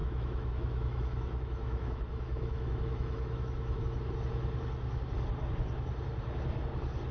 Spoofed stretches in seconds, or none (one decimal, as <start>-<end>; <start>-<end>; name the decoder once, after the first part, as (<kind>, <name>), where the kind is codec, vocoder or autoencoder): 0.0-3.8 (autoencoder, DAC-VAE)

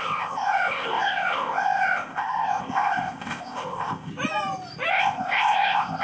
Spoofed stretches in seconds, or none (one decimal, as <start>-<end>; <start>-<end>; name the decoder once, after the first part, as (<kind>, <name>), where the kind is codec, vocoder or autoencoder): 0.0-4.1 (codec, ZipCodec); 4.9-6.0